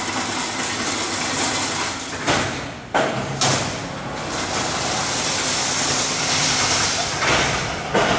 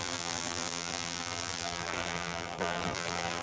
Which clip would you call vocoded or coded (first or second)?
second